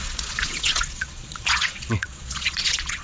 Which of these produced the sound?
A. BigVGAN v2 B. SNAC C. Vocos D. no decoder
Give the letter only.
C